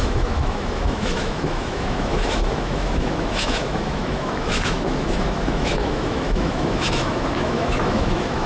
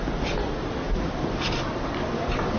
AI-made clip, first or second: first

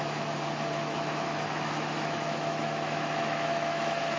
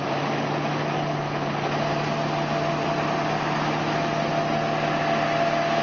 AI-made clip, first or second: first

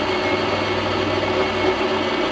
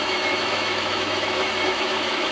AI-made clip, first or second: second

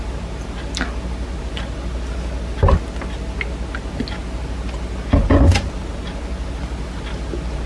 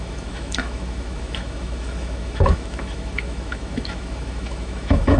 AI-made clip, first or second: second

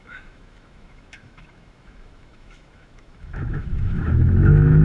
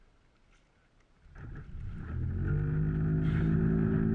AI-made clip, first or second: first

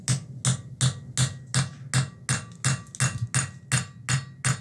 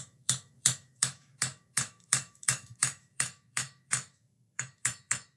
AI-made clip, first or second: second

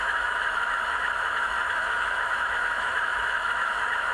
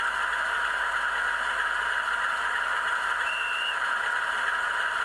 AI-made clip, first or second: first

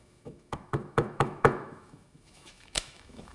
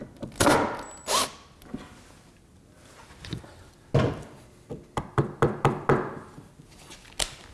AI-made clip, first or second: first